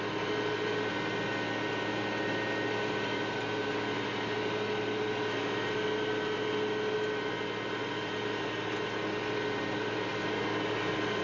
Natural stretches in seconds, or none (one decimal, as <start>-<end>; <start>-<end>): 0.0-11.2